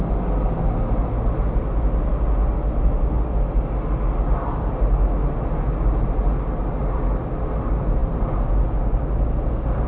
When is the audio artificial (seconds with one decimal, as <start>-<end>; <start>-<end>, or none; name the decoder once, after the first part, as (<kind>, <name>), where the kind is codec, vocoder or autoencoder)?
none